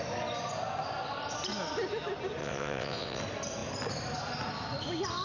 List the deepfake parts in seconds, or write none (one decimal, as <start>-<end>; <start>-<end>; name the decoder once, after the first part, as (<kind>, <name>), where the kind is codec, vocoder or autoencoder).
2.4-3.2 (vocoder, WaveNeXt)